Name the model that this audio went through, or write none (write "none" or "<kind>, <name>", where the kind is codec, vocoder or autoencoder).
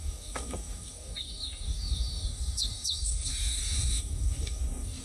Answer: codec, DAC